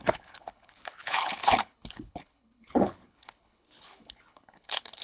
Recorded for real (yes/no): no